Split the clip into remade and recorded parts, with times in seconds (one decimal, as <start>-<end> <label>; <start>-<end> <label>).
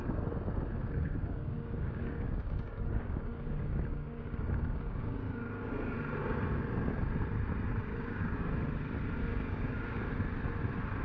0.0-0.8 recorded; 0.8-5.7 remade; 5.7-7.9 recorded; 7.9-8.5 remade; 8.5-9.2 recorded; 9.2-10.1 remade; 10.1-11.0 recorded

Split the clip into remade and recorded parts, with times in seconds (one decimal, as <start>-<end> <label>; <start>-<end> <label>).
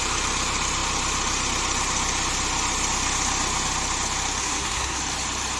0.0-4.4 recorded; 4.4-5.0 remade; 5.0-5.6 recorded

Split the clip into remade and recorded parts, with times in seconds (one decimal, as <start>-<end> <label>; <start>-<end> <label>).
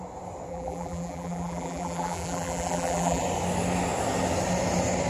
0.0-0.5 recorded; 0.5-3.2 remade; 3.2-5.1 recorded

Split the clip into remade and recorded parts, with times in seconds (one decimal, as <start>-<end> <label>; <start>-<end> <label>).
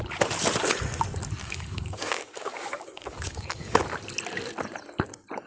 0.0-1.4 recorded; 1.4-3.8 remade; 3.8-5.5 recorded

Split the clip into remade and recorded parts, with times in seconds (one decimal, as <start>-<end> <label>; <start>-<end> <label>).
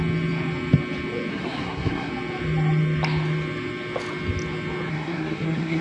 0.0-1.3 recorded; 1.3-2.1 remade; 2.1-4.9 recorded; 4.9-5.8 remade